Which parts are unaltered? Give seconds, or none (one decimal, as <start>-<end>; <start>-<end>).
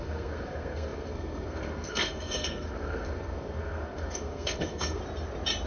5.0-5.7